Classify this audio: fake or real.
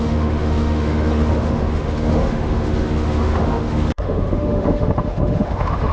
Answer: fake